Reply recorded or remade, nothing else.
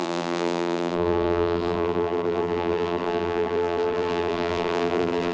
remade